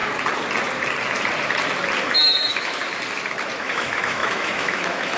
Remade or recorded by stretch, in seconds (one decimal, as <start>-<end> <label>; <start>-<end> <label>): 0.0-2.0 recorded; 2.0-2.8 remade; 2.8-3.6 recorded; 3.6-5.2 remade